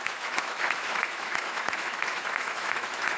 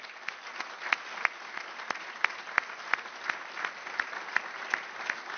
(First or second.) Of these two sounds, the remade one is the first